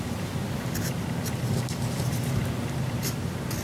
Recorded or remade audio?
recorded